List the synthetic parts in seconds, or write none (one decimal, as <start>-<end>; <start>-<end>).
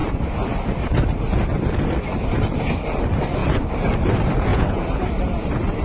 4.5-5.1